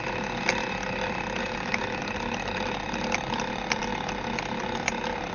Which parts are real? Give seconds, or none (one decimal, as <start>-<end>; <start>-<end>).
0.0-1.4; 2.0-5.3